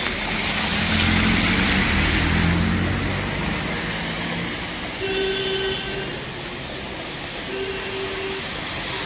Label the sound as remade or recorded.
recorded